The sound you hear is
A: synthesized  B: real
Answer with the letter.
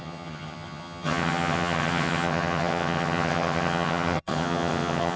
A